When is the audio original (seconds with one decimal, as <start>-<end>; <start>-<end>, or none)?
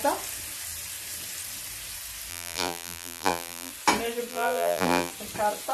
0.0-2.3; 3.7-4.3; 5.1-5.7